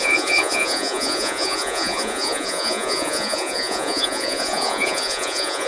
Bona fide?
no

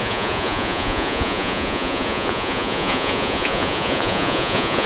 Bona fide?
no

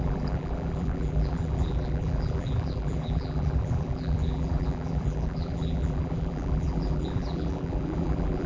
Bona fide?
no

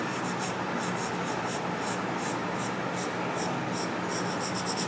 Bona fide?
yes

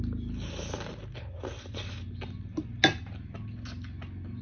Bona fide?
yes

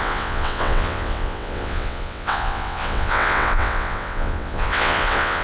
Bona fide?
no